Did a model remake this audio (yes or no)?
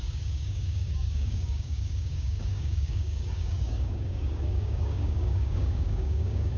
yes